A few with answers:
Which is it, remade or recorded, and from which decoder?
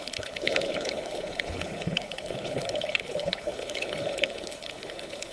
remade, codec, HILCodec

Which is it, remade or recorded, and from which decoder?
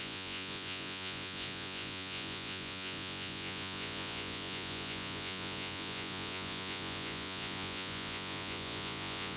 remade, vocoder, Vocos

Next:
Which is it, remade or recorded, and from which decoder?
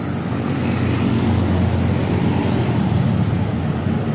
recorded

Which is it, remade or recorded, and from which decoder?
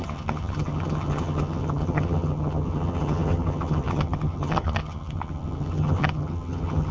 remade, vocoder, HiFi-GAN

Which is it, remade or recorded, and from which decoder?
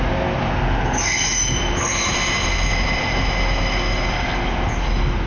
recorded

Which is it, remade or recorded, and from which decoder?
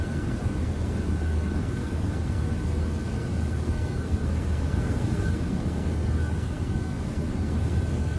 remade, codec, SNAC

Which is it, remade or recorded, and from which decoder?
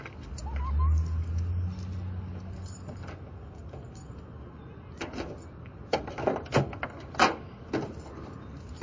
recorded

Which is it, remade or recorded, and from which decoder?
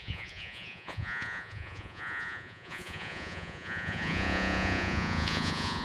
remade, vocoder, Vocos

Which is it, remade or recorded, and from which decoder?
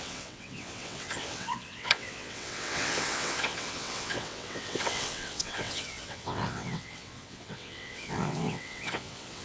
remade, vocoder, WaveNeXt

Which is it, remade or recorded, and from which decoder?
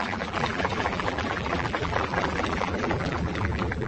remade, vocoder, BigVGAN v2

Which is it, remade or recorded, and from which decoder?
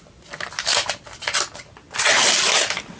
recorded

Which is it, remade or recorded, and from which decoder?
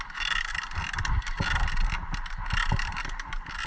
recorded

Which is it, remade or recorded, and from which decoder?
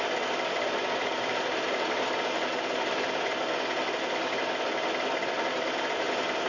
recorded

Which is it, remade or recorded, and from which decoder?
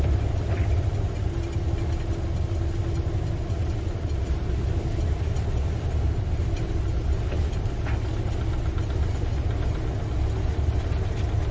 recorded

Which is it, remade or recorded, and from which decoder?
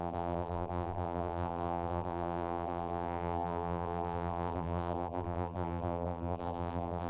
remade, vocoder, BigVGAN v2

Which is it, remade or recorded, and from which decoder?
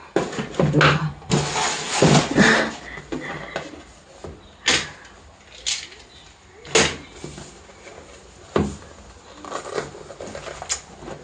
recorded